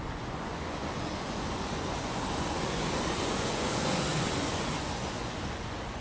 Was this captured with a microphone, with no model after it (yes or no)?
no